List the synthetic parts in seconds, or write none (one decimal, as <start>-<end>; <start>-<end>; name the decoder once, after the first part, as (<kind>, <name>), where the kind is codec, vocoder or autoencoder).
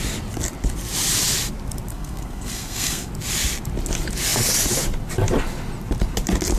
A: 1.9-3.1 (codec, SNAC)